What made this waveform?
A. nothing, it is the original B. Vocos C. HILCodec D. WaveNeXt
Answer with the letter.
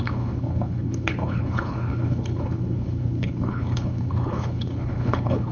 C